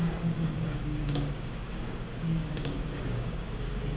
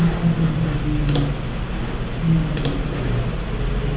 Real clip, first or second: second